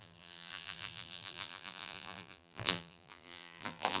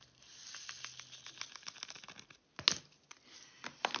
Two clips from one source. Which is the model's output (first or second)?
first